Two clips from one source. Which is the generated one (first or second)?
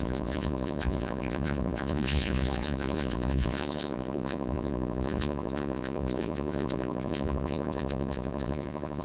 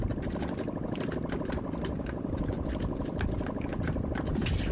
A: first